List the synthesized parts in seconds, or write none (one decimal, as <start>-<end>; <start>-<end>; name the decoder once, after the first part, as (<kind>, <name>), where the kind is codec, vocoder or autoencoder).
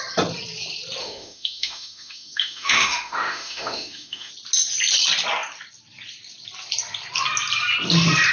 1.0-4.3 (autoencoder, DAC-VAE)